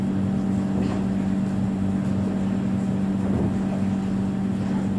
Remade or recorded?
recorded